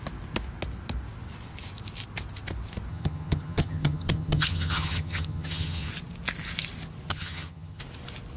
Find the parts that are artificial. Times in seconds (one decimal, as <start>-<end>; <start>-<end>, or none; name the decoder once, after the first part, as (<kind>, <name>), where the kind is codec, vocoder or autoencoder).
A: 2.9-5.9 (vocoder, HiFi-GAN); 7.1-7.8

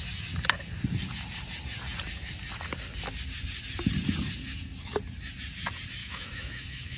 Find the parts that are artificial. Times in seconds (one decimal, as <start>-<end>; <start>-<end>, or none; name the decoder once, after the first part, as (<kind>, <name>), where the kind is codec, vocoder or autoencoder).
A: 6.0-7.0 (autoencoder, DAC-VAE)